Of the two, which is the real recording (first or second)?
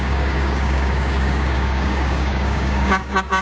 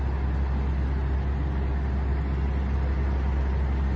second